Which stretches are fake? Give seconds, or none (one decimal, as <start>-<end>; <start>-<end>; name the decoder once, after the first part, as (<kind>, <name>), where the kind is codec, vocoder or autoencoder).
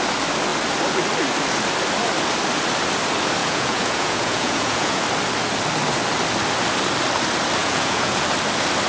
3.4-5.0 (vocoder, Vocos); 7.6-8.2